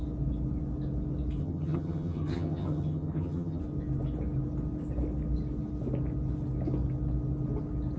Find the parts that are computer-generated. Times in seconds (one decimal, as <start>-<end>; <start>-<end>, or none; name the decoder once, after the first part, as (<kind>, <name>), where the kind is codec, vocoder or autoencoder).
1.4-3.6 (vocoder, HiFi-GAN)